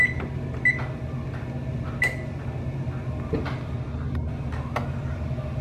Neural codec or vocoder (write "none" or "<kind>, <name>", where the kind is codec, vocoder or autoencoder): none